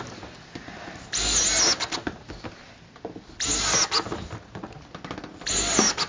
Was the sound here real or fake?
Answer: real